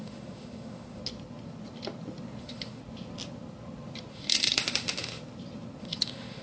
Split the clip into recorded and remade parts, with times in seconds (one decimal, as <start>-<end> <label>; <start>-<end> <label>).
0.0-1.0 remade; 1.0-2.4 recorded; 2.4-2.8 remade; 2.8-4.1 recorded; 4.1-5.2 remade; 5.2-5.8 recorded; 5.8-6.4 remade